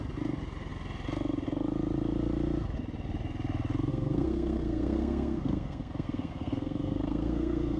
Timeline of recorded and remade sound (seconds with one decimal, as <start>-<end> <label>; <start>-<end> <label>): 0.0-3.9 recorded; 3.9-7.8 remade